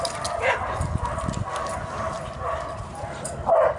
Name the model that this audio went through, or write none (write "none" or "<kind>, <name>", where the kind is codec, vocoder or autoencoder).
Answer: none